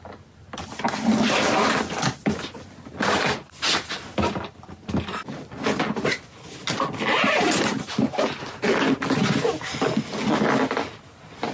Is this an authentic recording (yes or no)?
yes